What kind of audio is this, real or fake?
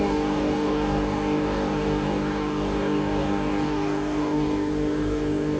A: fake